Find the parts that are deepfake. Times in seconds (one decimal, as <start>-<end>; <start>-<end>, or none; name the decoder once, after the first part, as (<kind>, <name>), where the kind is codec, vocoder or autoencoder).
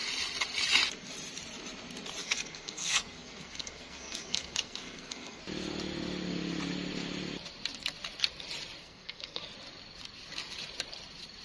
2.2-5.4 (codec, SNAC); 8.8-9.4